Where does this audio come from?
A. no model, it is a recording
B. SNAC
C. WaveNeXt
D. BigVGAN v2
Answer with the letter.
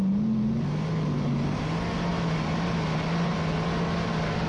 A